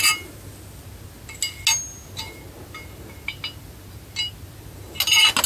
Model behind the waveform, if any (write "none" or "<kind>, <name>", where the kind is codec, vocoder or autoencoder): none